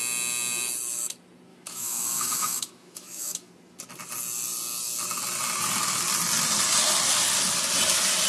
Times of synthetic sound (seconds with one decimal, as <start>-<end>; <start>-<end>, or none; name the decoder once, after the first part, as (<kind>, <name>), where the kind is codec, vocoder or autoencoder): 1.5-3.5 (autoencoder, DAC-VAE)